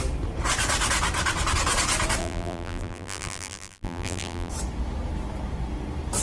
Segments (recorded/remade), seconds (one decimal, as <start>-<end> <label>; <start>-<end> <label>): 0.0-2.2 recorded; 2.2-4.5 remade; 4.5-6.2 recorded